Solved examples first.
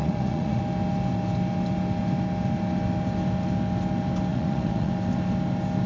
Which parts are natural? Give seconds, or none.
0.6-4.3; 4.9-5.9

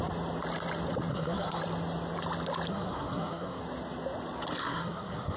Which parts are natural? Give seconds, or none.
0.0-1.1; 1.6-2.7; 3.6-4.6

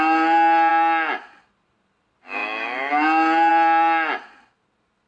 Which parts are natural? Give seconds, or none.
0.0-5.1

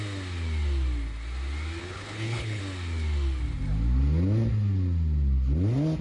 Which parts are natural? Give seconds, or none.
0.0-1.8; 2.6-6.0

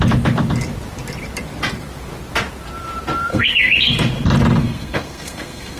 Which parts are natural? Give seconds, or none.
0.0-3.3; 3.9-4.6

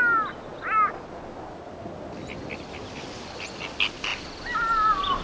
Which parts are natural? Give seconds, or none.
0.0-5.2

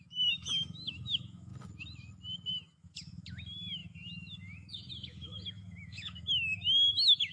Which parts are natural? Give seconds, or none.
1.5-2.5

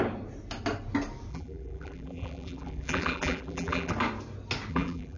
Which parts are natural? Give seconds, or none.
0.0-1.3; 3.9-4.7